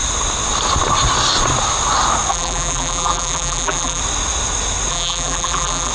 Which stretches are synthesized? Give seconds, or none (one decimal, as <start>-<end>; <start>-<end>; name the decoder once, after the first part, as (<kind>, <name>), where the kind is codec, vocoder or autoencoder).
2.3-4.0 (vocoder, BigVGAN v2); 4.9-5.9